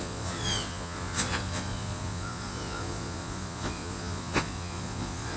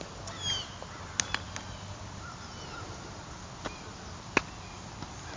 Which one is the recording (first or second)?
second